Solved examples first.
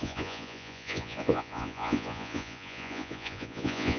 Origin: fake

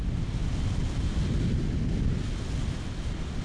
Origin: real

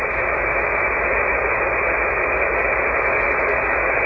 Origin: real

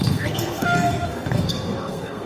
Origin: fake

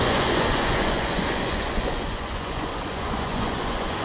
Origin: fake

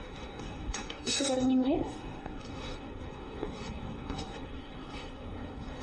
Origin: fake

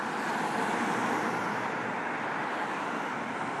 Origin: fake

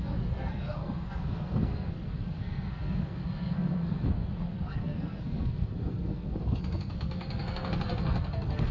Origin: fake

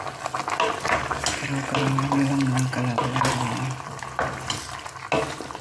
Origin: real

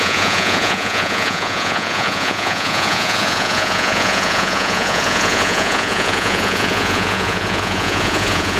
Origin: fake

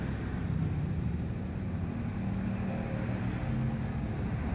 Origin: real